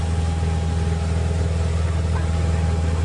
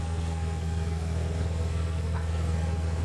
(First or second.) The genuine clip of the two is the first